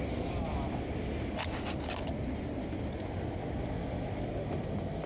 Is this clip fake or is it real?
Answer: real